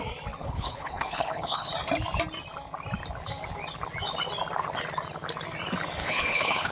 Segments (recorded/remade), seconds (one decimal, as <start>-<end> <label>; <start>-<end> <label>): 0.0-0.4 recorded; 0.4-1.7 remade; 1.7-6.0 recorded; 6.0-6.7 remade